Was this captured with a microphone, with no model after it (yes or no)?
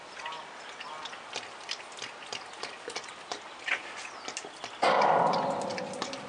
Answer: yes